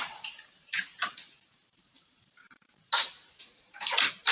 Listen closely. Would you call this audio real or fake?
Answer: fake